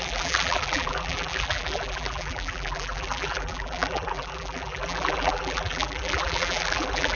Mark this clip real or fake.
fake